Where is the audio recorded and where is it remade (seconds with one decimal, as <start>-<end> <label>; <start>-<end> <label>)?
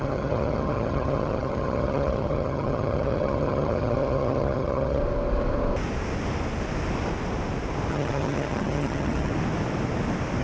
0.0-5.0 remade; 5.0-7.9 recorded; 7.9-9.3 remade; 9.3-10.4 recorded